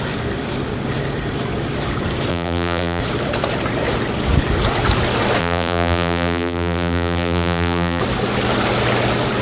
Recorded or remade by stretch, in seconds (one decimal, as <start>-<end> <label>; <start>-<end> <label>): 0.0-2.3 recorded; 2.3-3.0 remade; 3.0-5.4 recorded; 5.4-8.0 remade; 8.0-9.4 recorded